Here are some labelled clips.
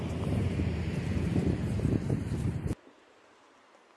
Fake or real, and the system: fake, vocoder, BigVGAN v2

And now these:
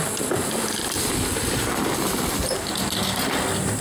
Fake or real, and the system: real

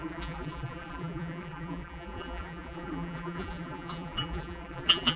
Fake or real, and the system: fake, vocoder, BigVGAN v2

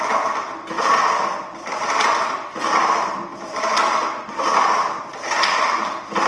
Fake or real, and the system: real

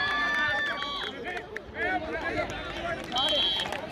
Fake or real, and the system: real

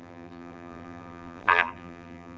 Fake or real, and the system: fake, vocoder, BigVGAN v2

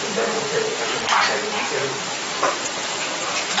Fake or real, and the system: fake, vocoder, BigVGAN v2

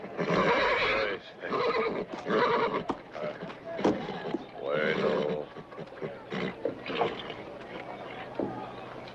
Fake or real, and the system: real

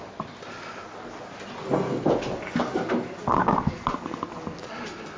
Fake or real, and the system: real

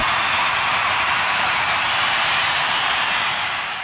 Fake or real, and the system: fake, vocoder, BigVGAN v2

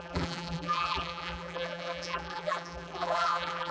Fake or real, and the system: fake, vocoder, BigVGAN v2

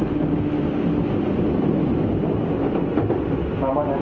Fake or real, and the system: real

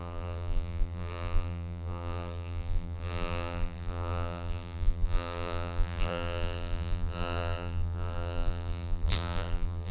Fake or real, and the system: fake, vocoder, BigVGAN v2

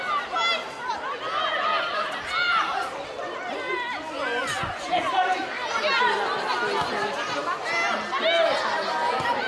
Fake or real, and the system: real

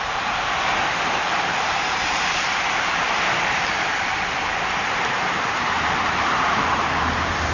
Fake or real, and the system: fake, vocoder, BigVGAN v2